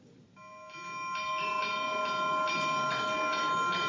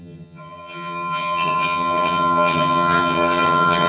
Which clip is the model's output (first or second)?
second